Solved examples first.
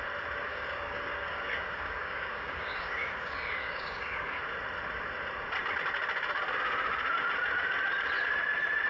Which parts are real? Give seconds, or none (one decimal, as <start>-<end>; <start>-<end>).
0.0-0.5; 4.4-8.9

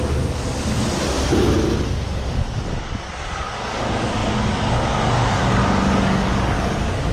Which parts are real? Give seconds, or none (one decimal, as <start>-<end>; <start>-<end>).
0.8-1.9

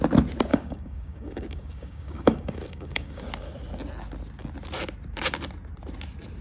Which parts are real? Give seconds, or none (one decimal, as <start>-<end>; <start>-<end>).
0.0-0.5; 3.2-6.4